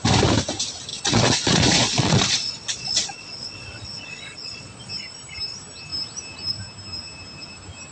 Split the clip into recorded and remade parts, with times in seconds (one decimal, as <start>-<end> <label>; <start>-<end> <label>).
0.0-0.9 recorded; 0.9-4.9 remade; 4.9-7.9 recorded